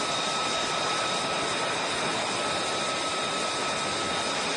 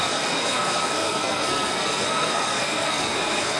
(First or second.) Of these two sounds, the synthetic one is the second